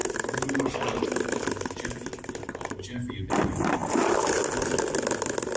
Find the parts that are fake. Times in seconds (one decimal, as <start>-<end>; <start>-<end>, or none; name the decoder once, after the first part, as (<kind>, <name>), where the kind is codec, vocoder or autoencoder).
none